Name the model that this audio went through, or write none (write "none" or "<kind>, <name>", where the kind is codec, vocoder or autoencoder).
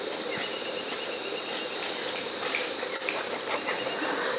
vocoder, BigVGAN v2